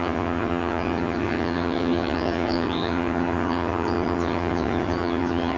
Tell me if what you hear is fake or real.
fake